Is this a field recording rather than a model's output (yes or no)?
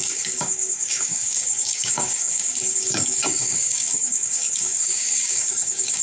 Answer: no